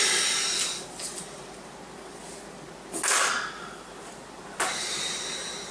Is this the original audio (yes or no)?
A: yes